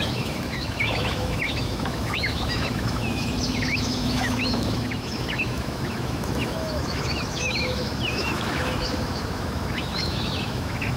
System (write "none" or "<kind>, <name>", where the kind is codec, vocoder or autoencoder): autoencoder, DAC-VAE